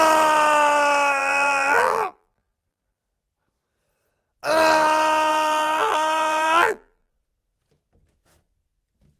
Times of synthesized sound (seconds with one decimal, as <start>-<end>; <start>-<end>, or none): 1.2-3.0; 5.3-7.1